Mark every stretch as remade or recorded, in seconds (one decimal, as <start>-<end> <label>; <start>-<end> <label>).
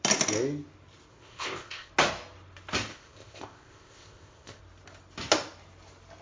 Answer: 0.0-1.1 recorded; 1.1-1.9 remade; 1.9-2.9 recorded; 2.9-4.6 remade; 4.6-6.2 recorded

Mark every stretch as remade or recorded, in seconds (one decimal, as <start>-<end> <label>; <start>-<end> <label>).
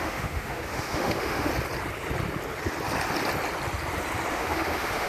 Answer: 0.0-1.5 remade; 1.5-4.3 recorded; 4.3-5.1 remade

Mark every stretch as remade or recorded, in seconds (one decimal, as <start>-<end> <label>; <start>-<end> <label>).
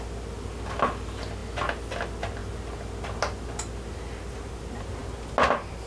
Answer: 0.0-5.9 recorded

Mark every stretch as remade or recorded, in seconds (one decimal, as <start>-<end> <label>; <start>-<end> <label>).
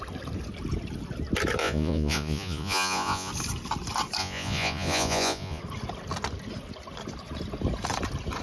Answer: 0.0-1.6 recorded; 1.6-3.3 remade; 3.3-4.2 recorded; 4.2-5.6 remade; 5.6-8.4 recorded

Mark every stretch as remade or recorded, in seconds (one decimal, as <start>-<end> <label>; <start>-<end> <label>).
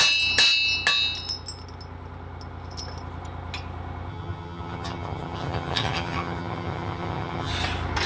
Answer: 0.0-4.1 recorded; 4.1-7.5 remade; 7.5-8.1 recorded